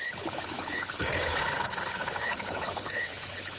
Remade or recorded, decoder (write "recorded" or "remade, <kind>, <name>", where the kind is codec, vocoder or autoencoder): remade, codec, HILCodec